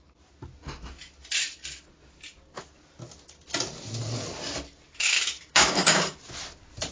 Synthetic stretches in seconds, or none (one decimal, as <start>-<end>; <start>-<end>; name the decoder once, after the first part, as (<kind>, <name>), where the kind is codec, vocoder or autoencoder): 5.0-6.1 (codec, DAC)